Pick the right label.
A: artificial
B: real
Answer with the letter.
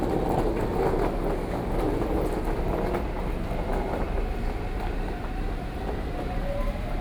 B